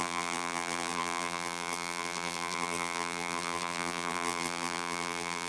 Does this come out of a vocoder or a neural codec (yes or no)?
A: yes